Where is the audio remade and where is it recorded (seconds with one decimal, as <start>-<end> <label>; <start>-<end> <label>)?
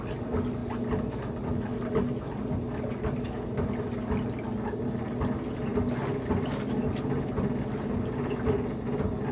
0.0-9.3 recorded